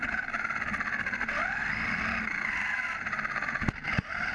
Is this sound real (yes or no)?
yes